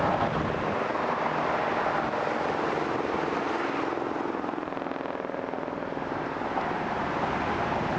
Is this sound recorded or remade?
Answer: recorded